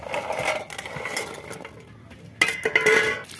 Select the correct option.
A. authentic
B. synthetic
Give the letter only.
A